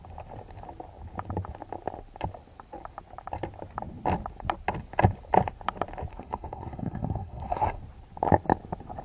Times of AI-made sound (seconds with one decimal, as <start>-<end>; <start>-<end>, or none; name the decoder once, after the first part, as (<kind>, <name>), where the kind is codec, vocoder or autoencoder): 6.1-7.8 (codec, SNAC)